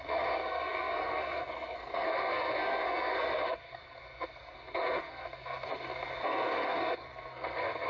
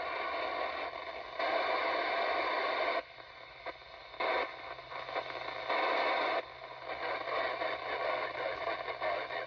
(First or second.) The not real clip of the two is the first